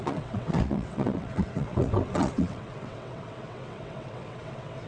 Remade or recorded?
remade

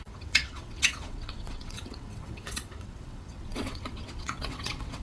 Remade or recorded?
remade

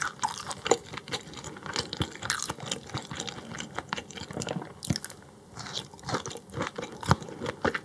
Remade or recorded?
recorded